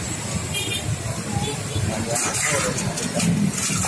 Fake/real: fake